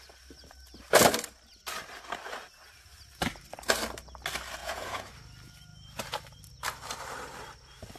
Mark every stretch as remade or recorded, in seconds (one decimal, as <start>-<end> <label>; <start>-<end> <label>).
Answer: 0.0-4.6 recorded; 4.6-5.1 remade; 5.1-8.0 recorded